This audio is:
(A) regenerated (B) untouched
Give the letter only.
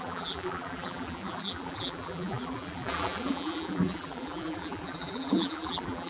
A